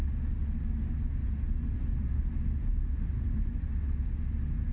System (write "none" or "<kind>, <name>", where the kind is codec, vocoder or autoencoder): none